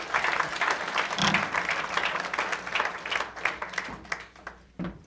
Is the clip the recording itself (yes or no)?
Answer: yes